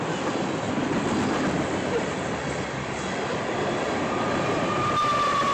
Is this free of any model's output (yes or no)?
no